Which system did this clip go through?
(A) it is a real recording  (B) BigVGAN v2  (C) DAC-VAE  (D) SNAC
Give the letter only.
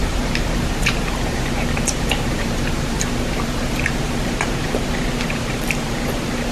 B